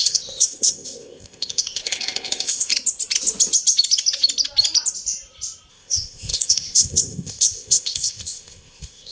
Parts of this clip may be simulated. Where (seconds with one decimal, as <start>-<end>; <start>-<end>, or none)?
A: 0.0-2.7; 5.7-9.1